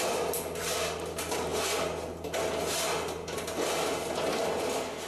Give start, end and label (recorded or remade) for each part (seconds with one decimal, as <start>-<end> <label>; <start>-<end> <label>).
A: 0.0-5.1 recorded